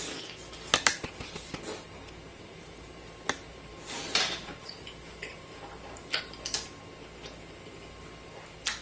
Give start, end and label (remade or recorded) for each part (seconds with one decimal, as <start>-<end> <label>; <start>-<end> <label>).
0.0-2.3 recorded; 2.3-6.2 remade; 6.2-8.8 recorded